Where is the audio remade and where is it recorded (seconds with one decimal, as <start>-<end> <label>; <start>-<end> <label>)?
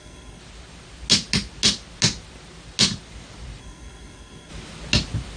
0.0-0.4 remade; 0.4-3.6 recorded; 3.6-4.5 remade; 4.5-5.4 recorded